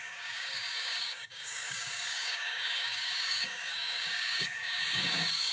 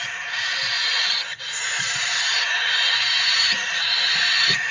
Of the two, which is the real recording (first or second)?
second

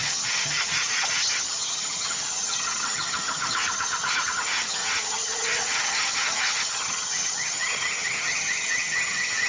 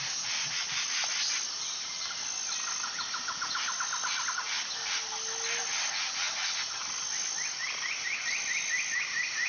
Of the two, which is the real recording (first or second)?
second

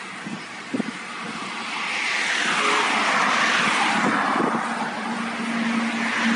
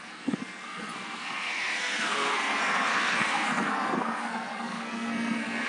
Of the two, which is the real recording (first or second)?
first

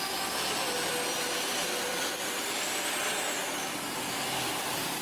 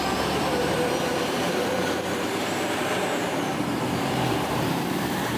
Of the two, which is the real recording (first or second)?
first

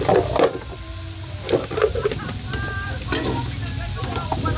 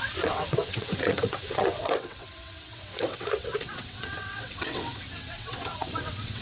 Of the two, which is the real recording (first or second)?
first